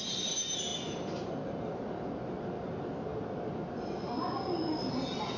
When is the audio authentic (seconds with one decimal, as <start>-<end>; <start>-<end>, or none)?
0.0-5.4